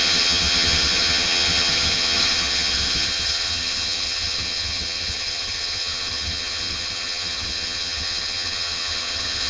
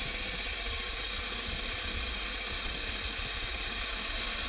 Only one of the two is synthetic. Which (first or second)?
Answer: first